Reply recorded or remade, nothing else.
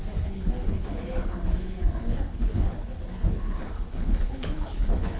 remade